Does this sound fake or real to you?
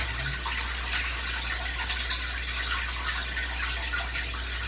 real